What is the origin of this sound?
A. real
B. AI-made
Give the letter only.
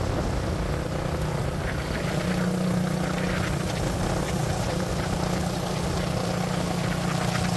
A